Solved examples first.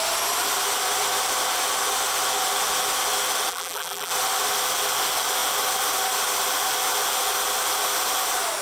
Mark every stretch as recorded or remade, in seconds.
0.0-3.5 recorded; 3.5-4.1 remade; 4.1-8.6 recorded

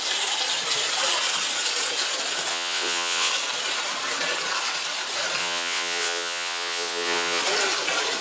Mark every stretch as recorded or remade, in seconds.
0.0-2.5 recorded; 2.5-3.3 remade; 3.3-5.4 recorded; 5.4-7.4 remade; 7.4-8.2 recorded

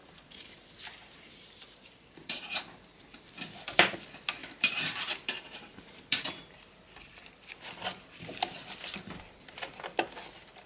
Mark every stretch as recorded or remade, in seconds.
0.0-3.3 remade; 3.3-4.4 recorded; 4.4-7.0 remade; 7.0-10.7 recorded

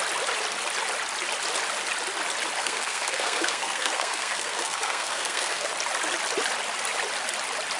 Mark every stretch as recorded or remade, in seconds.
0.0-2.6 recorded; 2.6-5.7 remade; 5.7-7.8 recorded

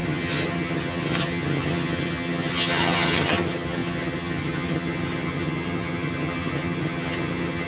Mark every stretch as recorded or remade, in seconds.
0.0-7.7 remade

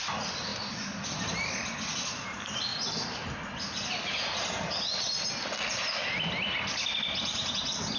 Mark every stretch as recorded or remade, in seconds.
0.0-8.0 recorded

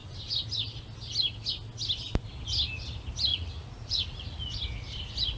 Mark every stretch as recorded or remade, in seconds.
0.0-3.3 recorded; 3.3-4.4 remade; 4.4-5.4 recorded